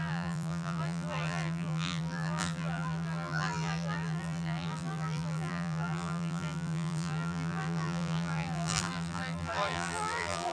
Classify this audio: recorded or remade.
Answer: remade